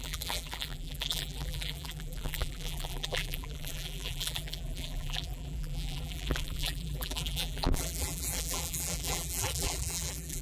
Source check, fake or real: fake